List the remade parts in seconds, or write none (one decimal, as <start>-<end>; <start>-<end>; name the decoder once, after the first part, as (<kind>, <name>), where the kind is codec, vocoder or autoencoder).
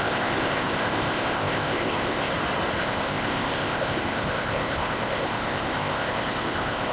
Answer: 0.0-2.3 (codec, ZipCodec); 2.8-6.9